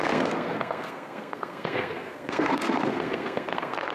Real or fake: fake